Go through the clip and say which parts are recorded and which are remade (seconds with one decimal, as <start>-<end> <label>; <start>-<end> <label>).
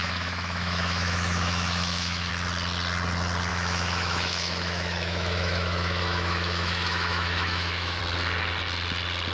0.0-2.3 remade; 2.3-3.5 recorded; 3.5-8.0 remade; 8.0-9.3 recorded